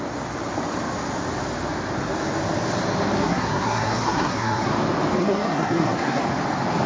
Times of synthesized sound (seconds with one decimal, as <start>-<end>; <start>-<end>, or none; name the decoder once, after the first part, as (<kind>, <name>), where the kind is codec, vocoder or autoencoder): 3.2-4.7 (codec, SNAC); 5.2-6.2